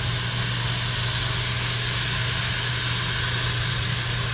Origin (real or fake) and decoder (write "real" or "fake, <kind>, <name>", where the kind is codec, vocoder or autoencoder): real